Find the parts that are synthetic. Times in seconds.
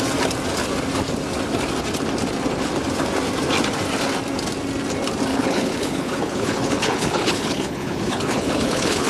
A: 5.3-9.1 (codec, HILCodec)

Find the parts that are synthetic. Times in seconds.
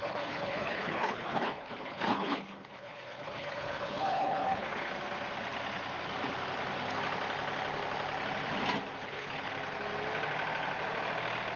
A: 0.0-4.9 (codec, HILCodec); 9.0-9.5